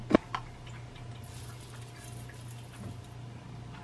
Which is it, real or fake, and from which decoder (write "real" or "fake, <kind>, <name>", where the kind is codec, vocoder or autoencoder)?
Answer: real